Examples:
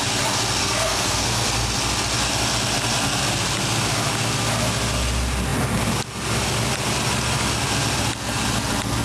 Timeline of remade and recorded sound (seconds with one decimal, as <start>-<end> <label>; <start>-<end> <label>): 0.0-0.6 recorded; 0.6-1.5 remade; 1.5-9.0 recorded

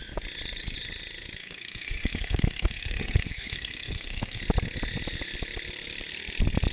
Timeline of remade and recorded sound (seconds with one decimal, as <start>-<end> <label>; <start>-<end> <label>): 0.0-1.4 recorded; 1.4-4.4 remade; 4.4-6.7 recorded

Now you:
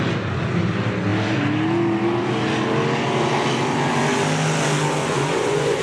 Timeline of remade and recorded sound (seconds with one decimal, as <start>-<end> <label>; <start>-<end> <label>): 0.0-5.0 recorded; 5.0-5.8 remade